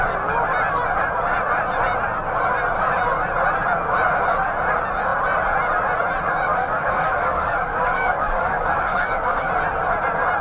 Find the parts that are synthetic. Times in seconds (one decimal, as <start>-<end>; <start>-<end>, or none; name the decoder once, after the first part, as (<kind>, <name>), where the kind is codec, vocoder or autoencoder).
6.5-9.5 (codec, DAC)